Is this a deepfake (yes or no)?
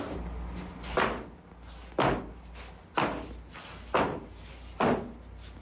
no